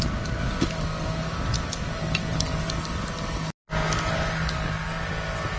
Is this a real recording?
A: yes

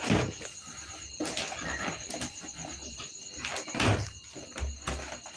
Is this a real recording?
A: yes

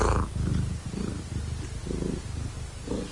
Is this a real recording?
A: yes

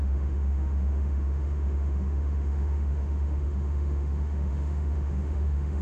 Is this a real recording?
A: no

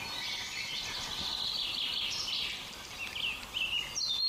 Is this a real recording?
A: yes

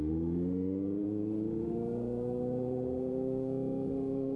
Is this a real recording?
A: no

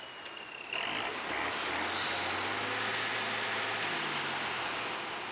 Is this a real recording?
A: yes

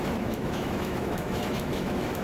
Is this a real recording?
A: no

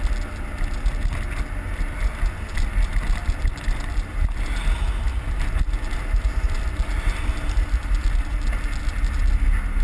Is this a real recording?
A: yes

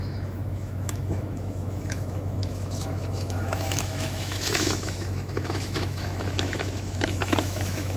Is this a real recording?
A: no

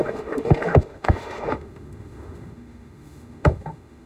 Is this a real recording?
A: no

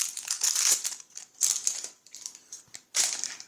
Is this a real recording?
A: yes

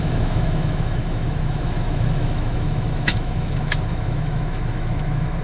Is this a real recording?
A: no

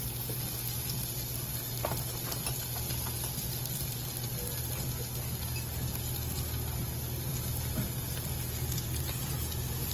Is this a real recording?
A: yes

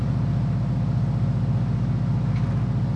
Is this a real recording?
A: yes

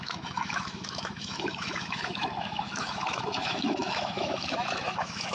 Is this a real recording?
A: no